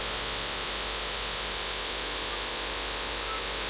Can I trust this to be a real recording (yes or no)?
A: yes